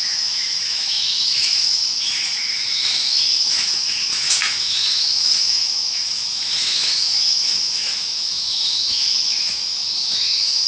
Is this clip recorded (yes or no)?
no